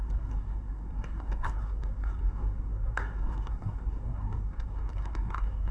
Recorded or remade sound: remade